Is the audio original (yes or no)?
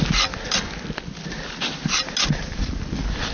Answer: yes